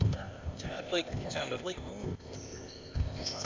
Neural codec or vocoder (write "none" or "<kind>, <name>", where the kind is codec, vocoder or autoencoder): codec, ZipCodec